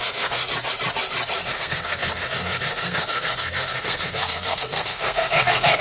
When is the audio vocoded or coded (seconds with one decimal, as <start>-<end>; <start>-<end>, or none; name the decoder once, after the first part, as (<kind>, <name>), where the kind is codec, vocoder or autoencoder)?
0.0-0.4 (codec, SNAC); 1.5-5.8